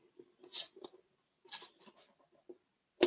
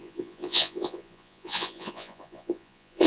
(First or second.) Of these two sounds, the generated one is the second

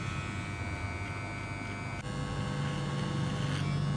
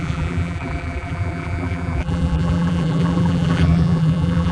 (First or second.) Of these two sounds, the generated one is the second